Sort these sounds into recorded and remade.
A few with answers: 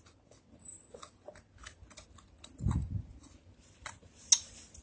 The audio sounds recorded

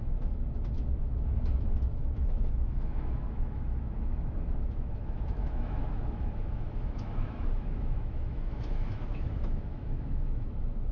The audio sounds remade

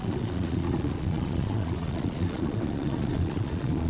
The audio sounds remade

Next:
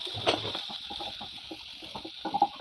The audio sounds recorded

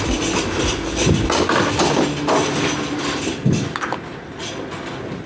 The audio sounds recorded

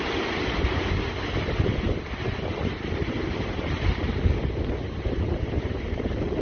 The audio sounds recorded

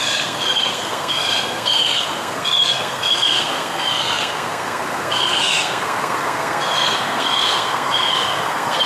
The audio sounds remade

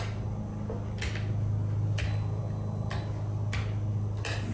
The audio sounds recorded